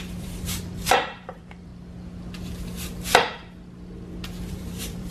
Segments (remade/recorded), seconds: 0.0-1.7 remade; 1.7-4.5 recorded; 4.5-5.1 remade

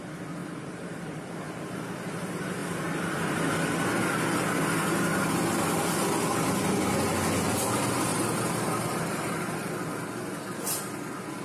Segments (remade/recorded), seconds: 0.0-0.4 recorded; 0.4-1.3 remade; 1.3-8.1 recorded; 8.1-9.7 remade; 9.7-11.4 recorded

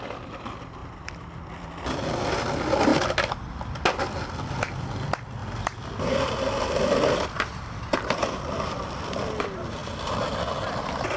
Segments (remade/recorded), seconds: 0.0-2.9 remade; 2.9-3.5 recorded; 3.5-5.4 remade; 5.4-6.1 recorded; 6.1-11.2 remade

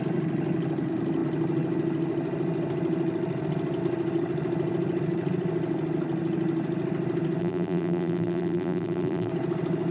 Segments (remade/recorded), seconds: 0.0-7.4 recorded; 7.4-9.3 remade; 9.3-9.9 recorded

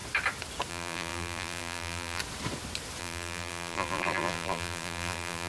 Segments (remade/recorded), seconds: 0.0-0.7 recorded; 0.7-2.2 remade; 2.2-3.0 recorded; 3.0-5.5 remade

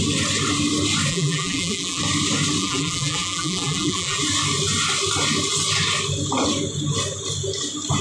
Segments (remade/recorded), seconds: 0.0-1.1 recorded; 1.1-2.0 remade; 2.0-2.6 recorded; 2.6-4.2 remade; 4.2-8.0 recorded

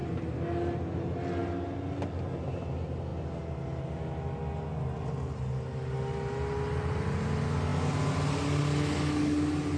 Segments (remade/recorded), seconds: 0.0-9.8 recorded